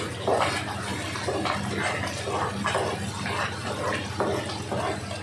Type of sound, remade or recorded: recorded